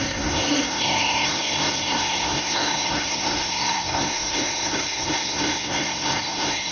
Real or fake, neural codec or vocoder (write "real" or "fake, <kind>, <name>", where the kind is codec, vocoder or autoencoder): fake, codec, SNAC